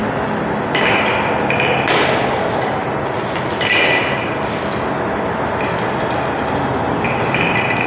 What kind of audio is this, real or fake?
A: real